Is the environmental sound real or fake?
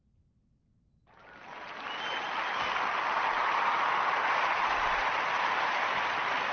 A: real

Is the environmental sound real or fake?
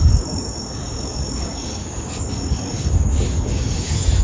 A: fake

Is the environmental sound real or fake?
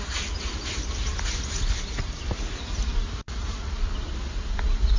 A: real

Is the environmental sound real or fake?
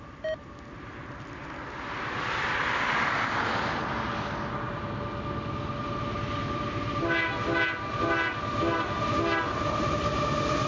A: real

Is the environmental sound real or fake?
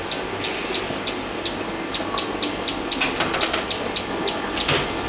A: real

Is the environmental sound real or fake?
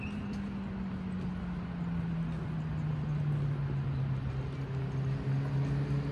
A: real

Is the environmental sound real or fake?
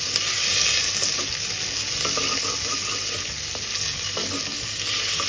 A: real